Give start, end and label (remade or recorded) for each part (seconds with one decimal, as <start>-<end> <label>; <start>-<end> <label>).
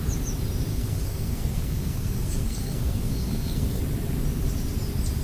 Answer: 0.0-0.7 recorded; 0.7-3.8 remade; 3.8-5.2 recorded